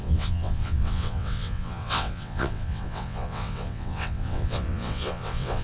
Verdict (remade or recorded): remade